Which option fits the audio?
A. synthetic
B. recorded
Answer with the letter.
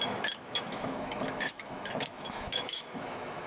A